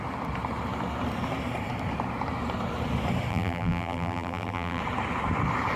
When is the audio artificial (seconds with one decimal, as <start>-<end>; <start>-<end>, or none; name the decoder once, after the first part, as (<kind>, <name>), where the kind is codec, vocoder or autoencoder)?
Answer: 3.3-4.8 (vocoder, BigVGAN v2)